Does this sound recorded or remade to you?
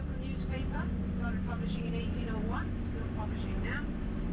recorded